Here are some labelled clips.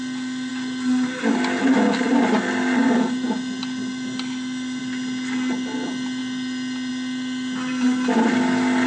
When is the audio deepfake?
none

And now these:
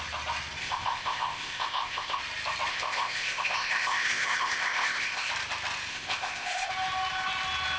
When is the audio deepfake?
0.6-2.2 (codec, ZipCodec); 2.7-5.3; 5.9-6.7

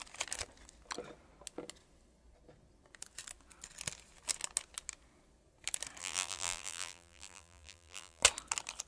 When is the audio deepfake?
6.0-8.2 (vocoder, BigVGAN v2)

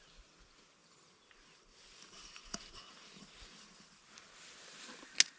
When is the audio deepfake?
0.8-4.0 (vocoder, BigVGAN v2)

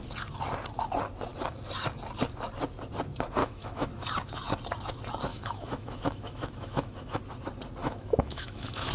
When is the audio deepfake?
3.4-3.9 (autoencoder, DAC-VAE); 5.3-7.2; 7.8-8.9